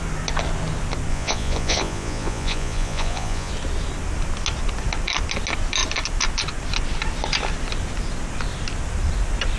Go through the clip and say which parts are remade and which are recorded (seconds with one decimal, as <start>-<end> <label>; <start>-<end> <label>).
0.0-1.1 recorded; 1.1-3.5 remade; 3.5-9.6 recorded